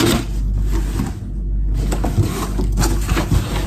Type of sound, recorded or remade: recorded